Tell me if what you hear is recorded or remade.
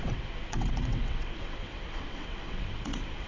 remade